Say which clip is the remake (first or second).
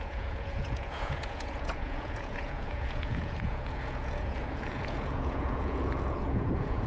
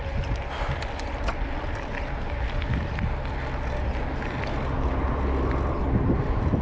first